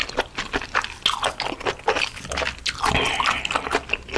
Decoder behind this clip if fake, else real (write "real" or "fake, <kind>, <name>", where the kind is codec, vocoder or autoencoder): real